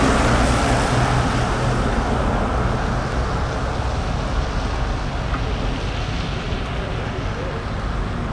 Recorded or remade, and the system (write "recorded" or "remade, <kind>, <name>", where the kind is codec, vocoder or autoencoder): recorded